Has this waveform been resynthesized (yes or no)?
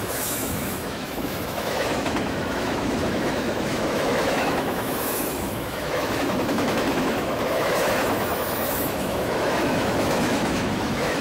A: yes